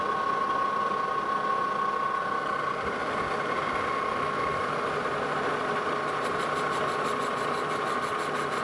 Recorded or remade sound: recorded